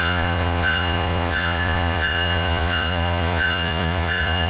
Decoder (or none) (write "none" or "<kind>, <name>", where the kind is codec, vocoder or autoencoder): vocoder, Vocos